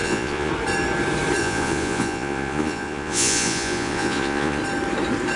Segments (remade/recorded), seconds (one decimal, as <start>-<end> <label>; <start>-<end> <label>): 0.0-0.5 remade; 0.5-1.4 recorded; 1.4-4.6 remade; 4.6-5.4 recorded